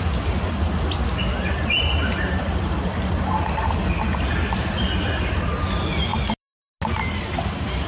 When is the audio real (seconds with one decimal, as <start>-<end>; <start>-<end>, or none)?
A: 0.0-7.9